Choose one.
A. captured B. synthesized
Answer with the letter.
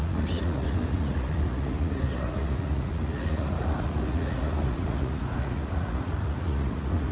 B